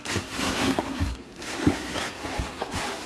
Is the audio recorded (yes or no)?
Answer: no